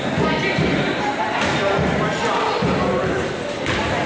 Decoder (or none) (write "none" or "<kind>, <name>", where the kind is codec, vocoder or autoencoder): vocoder, BigVGAN v2